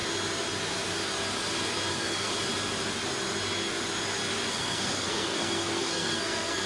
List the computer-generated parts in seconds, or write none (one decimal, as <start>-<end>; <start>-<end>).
1.9-2.3; 4.5-6.7